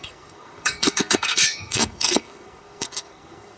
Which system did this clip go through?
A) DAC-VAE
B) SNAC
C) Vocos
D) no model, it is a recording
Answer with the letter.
B